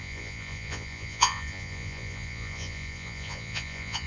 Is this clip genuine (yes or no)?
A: no